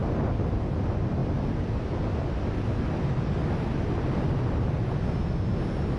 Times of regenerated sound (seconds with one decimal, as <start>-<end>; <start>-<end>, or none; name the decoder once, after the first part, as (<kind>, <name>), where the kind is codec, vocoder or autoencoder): none